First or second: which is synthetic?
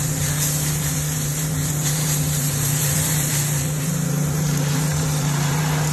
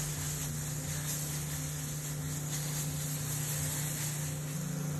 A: first